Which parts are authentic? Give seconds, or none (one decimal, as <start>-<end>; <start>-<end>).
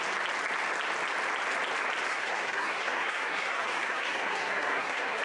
0.0-2.1